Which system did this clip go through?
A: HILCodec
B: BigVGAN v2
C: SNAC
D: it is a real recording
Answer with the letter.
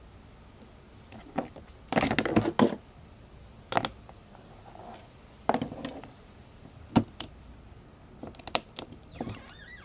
D